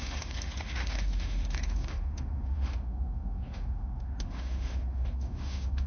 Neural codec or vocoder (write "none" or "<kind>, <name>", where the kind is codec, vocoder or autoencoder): autoencoder, DAC-VAE